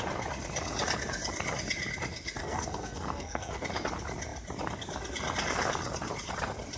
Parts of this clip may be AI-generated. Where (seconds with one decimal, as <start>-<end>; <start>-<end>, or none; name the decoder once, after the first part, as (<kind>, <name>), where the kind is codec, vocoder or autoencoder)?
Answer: 2.4-3.6 (codec, SNAC)